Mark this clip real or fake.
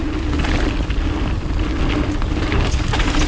real